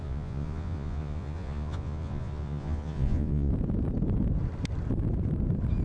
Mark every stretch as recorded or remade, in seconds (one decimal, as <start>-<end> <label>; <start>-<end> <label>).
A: 0.0-3.5 remade; 3.5-5.8 recorded